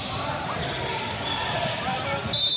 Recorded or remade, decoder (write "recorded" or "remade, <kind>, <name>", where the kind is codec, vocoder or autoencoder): recorded